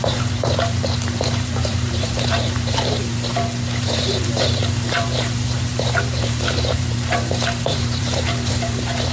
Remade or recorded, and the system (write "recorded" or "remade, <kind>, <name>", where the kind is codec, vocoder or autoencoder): remade, vocoder, BigVGAN v2